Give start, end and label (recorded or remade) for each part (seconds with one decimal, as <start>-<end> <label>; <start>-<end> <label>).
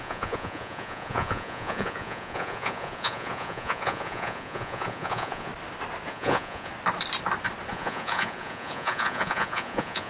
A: 0.0-5.5 remade; 5.5-6.1 recorded; 6.1-6.7 remade; 6.7-7.7 recorded; 7.7-10.1 remade